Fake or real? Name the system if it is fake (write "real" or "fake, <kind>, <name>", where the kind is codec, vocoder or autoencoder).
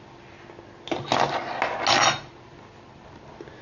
real